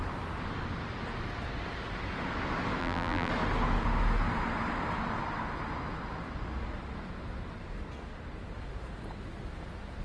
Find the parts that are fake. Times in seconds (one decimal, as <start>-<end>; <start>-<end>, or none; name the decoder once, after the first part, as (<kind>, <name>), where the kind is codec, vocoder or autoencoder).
2.8-3.3 (vocoder, BigVGAN v2)